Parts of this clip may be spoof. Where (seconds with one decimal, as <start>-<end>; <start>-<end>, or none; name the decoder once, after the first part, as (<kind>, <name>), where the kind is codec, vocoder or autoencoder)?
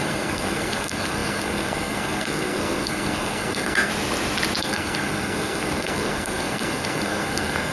0.0-3.9 (codec, SNAC); 4.6-7.7